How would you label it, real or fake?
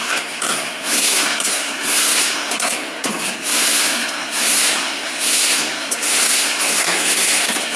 fake